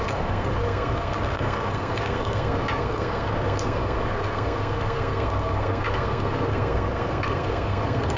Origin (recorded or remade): remade